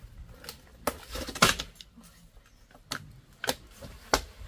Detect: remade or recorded recorded